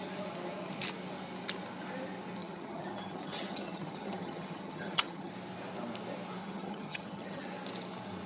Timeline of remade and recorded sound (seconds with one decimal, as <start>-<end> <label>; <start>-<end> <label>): 0.0-2.4 recorded; 2.4-5.3 remade; 5.3-6.4 recorded; 6.4-7.5 remade; 7.5-8.3 recorded